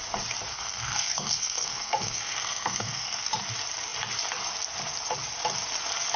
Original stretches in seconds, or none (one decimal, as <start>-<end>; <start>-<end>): 0.0-0.5; 3.3-6.2